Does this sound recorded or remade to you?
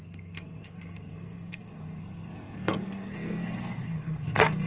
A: remade